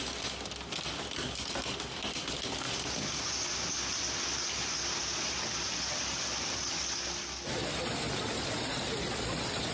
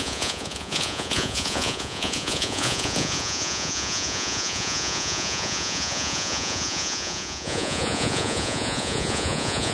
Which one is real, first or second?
first